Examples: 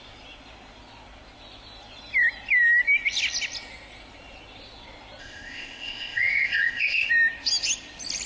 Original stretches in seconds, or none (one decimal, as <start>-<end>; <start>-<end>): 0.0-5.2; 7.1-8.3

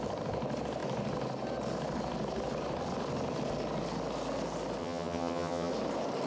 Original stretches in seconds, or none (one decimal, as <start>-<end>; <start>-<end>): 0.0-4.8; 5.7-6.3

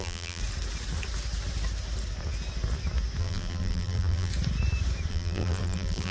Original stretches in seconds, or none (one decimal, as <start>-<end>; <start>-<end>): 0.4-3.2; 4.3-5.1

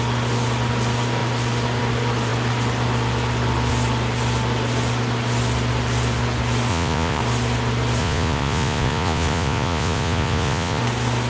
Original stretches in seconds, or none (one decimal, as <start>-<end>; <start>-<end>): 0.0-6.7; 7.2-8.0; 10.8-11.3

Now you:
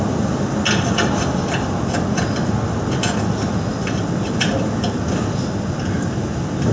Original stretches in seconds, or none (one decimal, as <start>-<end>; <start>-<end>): 0.0-6.7

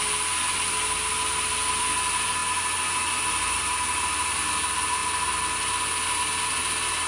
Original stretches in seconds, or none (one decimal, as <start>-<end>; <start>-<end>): 0.0-7.1

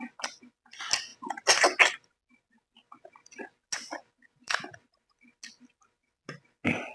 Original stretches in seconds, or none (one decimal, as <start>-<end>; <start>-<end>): 0.0-6.9